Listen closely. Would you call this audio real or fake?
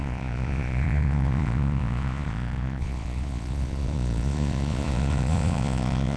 fake